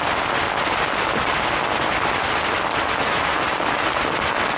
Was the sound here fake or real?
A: real